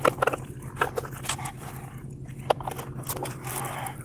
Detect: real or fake real